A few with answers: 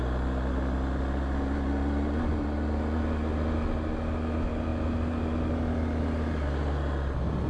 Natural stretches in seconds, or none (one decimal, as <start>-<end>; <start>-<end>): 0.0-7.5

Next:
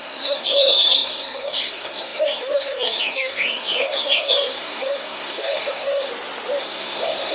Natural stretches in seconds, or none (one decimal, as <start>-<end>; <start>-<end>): 6.1-6.6

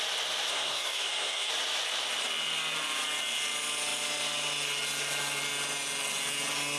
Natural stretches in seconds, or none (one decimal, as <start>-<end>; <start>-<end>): 0.0-0.5; 1.5-6.8